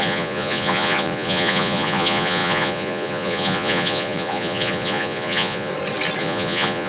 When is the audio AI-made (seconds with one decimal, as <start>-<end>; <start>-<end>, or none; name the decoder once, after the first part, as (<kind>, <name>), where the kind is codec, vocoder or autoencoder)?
0.0-5.7 (vocoder, Vocos); 6.2-6.9